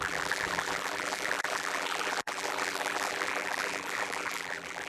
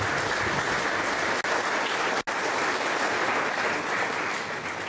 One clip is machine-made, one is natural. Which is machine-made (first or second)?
first